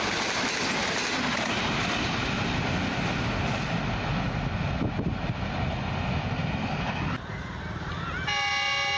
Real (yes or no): yes